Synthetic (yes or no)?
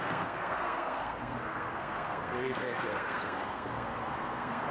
yes